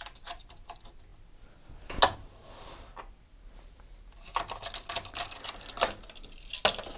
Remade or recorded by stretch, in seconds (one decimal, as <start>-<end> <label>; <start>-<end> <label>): 0.0-7.0 recorded